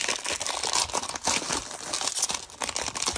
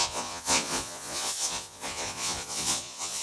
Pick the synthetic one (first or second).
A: second